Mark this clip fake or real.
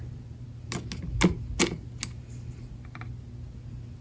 real